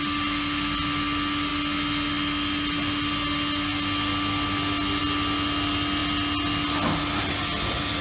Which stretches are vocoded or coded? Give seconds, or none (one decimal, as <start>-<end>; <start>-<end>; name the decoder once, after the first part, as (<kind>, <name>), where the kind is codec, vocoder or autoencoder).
none